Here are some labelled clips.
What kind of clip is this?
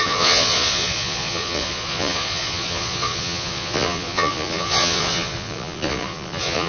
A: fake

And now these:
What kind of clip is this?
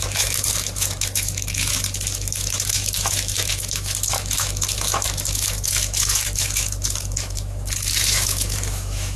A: fake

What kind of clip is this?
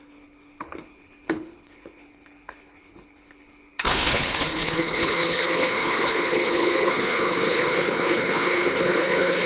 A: fake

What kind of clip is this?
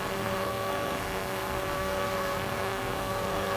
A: fake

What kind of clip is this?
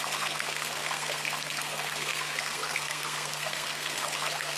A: fake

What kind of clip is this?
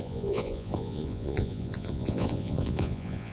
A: fake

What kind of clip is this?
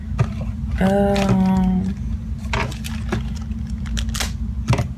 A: real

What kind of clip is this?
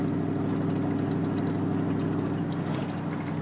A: real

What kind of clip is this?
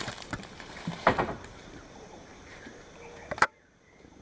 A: fake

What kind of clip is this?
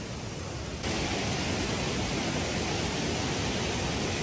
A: real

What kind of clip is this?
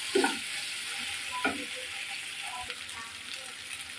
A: real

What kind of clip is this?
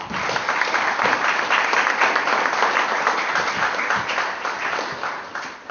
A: fake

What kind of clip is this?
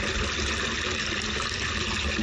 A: real